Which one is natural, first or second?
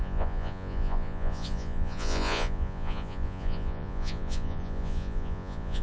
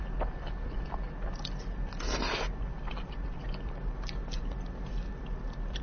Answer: second